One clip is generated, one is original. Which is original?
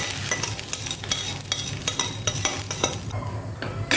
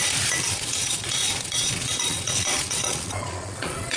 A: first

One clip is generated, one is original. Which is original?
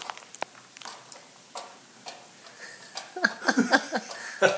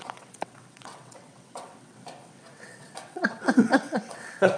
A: first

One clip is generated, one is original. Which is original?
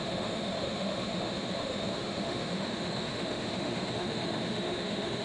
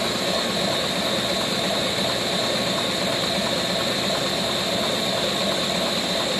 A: second